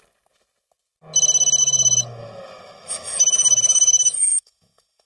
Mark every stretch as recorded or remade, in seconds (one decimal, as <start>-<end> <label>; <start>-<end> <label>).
0.0-1.6 recorded; 1.6-5.1 remade